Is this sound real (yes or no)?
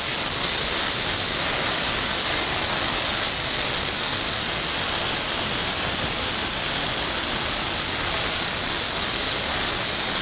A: yes